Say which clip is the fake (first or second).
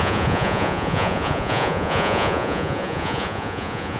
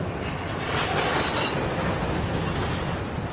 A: first